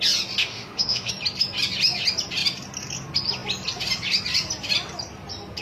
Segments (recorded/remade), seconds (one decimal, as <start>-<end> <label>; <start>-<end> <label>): 0.0-0.4 recorded; 0.4-1.1 remade; 1.1-5.6 recorded

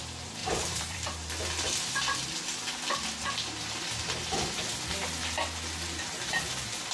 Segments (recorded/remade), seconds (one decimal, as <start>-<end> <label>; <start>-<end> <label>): 0.0-0.4 recorded; 0.4-1.3 remade; 1.3-6.9 recorded

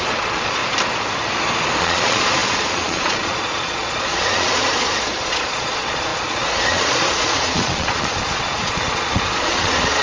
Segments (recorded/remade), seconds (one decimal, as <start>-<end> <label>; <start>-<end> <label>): 0.0-0.6 remade; 0.6-1.8 recorded; 1.8-10.0 remade